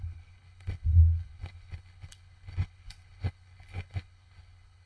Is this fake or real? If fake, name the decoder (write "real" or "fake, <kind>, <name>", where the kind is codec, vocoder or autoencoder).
fake, codec, HILCodec